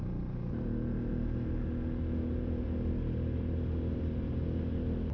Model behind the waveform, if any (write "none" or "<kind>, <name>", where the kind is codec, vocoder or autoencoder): none